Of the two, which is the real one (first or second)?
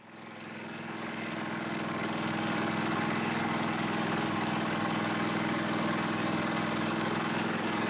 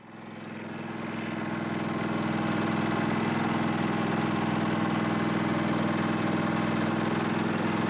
second